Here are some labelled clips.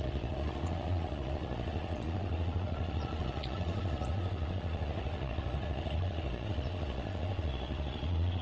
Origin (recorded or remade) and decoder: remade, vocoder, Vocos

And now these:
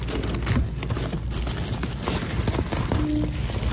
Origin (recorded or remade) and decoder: recorded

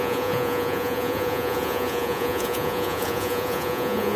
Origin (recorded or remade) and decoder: remade, vocoder, Vocos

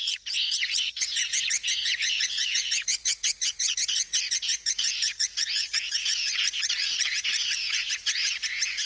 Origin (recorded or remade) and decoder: remade, vocoder, Vocos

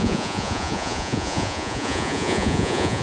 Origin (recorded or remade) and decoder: remade, vocoder, Vocos